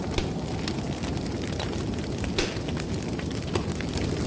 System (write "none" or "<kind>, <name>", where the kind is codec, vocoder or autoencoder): none